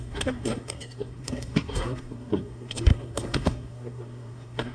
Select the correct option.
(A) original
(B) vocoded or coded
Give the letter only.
B